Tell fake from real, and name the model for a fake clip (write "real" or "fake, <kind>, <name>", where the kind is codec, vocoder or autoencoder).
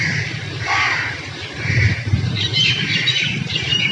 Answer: fake, vocoder, BigVGAN v2